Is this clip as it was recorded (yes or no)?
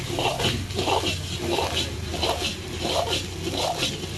yes